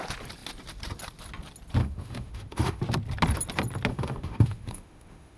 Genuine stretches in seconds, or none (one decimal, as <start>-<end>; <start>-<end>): 0.0-1.8; 2.8-3.9